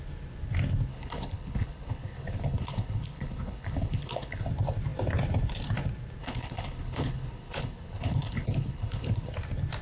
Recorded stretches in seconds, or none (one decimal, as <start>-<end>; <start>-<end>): 0.0-0.9; 4.5-6.2; 9.3-9.8